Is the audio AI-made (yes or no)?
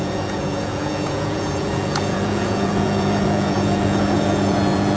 yes